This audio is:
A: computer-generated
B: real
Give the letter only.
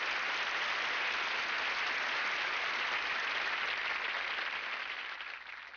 B